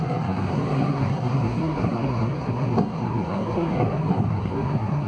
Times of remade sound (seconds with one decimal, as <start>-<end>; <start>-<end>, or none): 0.0-5.1